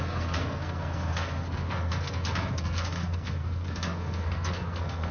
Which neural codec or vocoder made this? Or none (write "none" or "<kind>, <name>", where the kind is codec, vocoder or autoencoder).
codec, SNAC